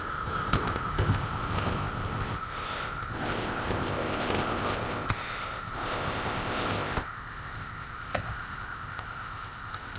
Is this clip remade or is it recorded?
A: remade